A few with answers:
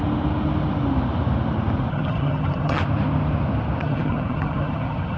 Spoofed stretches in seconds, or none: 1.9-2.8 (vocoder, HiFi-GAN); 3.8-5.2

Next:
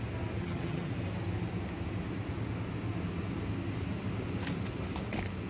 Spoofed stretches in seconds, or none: 0.4-0.9 (vocoder, HiFi-GAN)

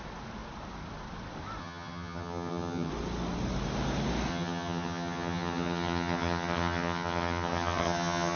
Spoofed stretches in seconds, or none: 1.6-2.9 (vocoder, HiFi-GAN); 4.3-8.4

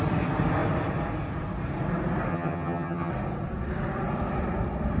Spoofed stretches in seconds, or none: 2.3-3.1 (vocoder, HiFi-GAN)

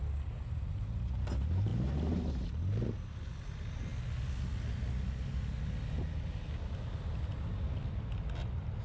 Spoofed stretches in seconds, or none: none